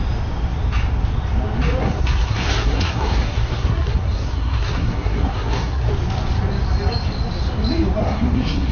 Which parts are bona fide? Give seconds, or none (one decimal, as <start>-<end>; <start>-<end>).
0.0-1.8; 5.9-8.0